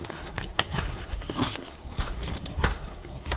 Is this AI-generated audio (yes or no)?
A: yes